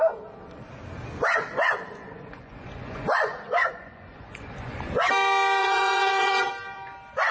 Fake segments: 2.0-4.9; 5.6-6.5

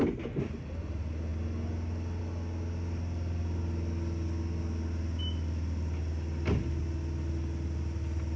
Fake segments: none